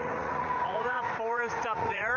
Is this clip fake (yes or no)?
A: yes